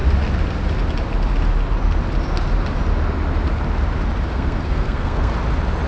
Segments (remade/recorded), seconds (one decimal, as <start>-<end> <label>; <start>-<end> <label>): 0.0-4.3 recorded; 4.3-5.3 remade; 5.3-5.9 recorded